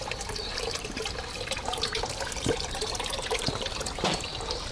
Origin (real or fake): fake